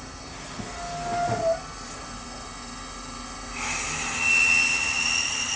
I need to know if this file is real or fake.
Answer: real